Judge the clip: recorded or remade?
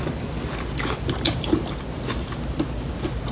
recorded